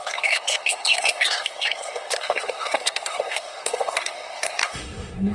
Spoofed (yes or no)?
yes